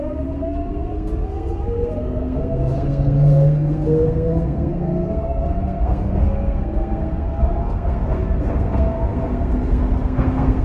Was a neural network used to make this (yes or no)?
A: yes